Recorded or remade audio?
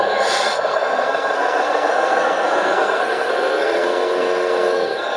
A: remade